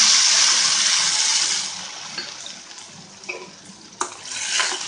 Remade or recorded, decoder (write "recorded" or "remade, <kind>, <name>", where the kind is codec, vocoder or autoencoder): recorded